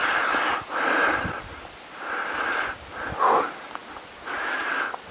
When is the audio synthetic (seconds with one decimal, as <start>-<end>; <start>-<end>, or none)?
0.0-3.1